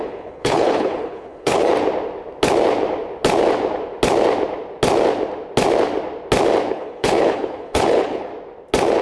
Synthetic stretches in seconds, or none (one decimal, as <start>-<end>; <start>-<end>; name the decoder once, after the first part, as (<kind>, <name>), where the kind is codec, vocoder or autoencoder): 0.0-1.7 (codec, HILCodec); 6.7-8.3